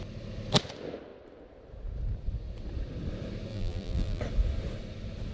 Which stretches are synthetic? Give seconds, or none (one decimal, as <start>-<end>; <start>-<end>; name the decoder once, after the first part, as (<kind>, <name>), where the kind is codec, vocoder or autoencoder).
3.5-4.2 (vocoder, BigVGAN v2)